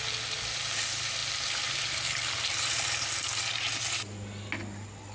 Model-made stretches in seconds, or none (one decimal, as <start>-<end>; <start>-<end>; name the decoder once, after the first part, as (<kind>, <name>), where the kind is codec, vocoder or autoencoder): none